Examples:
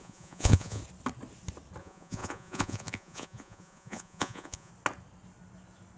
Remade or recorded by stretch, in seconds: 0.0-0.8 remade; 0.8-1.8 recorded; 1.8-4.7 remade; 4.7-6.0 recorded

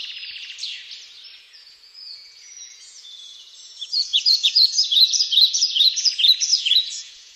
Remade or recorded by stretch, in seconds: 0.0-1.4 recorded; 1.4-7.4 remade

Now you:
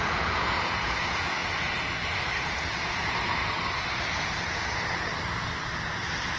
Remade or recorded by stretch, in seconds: 0.0-1.4 remade; 1.4-2.5 recorded; 2.5-3.4 remade; 3.4-3.9 recorded; 3.9-5.1 remade; 5.1-6.4 recorded

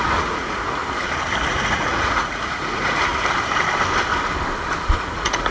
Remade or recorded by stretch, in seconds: 0.0-0.8 remade; 0.8-1.5 recorded; 1.5-3.1 remade; 3.1-5.0 recorded; 5.0-5.5 remade

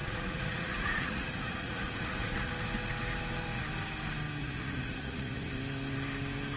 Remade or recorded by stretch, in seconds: 0.0-2.5 remade; 2.5-4.4 recorded; 4.4-5.5 remade; 5.5-6.6 recorded

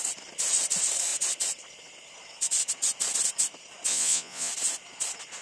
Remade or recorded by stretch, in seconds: 0.0-3.9 recorded; 3.9-4.5 remade; 4.5-5.4 recorded

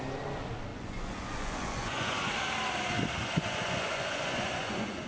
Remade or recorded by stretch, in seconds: 0.0-0.7 recorded; 0.7-2.3 remade; 2.3-3.2 recorded; 3.2-5.1 remade